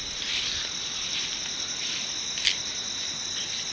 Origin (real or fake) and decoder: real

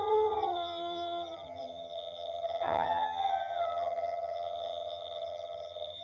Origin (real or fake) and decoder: fake, vocoder, HiFi-GAN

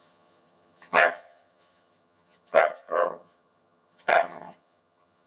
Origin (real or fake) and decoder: fake, vocoder, HiFi-GAN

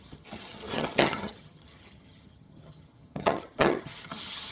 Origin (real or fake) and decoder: fake, vocoder, HiFi-GAN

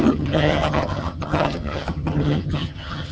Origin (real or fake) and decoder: fake, vocoder, HiFi-GAN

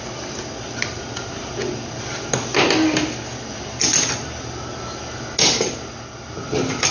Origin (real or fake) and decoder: real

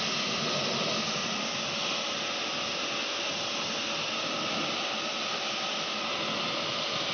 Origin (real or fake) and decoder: real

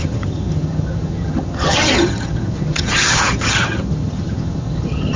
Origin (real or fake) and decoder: fake, vocoder, HiFi-GAN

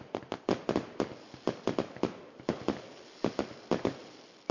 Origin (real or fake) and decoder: real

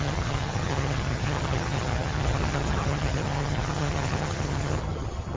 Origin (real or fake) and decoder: fake, vocoder, HiFi-GAN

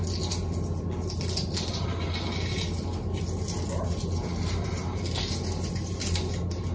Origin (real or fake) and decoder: real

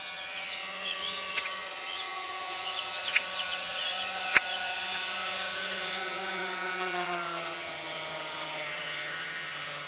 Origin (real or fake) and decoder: fake, vocoder, HiFi-GAN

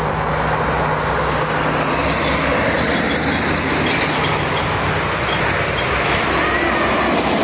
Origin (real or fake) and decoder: real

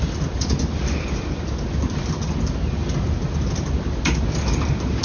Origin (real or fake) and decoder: real